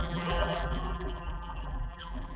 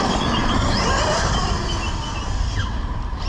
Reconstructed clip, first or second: first